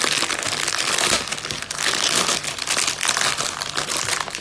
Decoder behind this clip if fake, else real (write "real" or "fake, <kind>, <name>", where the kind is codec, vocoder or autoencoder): real